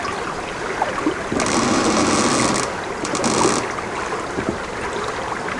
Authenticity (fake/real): real